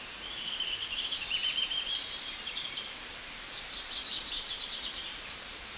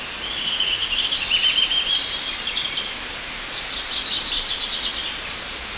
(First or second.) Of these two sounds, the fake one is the first